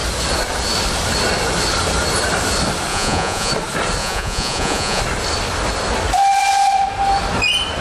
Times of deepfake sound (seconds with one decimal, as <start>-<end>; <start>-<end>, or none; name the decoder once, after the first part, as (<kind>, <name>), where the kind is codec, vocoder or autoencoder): 2.9-3.5 (vocoder, Vocos); 4.0-5.0